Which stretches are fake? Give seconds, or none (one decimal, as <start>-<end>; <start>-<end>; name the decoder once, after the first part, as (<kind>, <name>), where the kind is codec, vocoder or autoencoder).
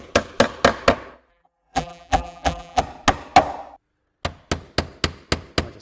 1.3-2.8 (vocoder, BigVGAN v2)